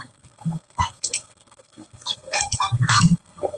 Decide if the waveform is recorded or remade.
remade